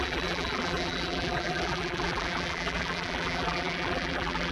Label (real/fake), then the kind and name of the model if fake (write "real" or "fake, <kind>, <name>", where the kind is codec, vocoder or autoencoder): fake, vocoder, BigVGAN v2